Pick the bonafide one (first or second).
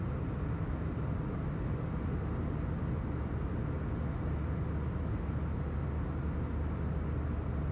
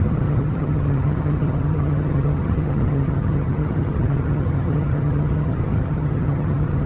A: first